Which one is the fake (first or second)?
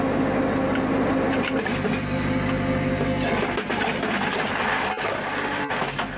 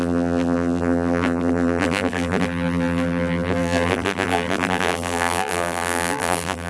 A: second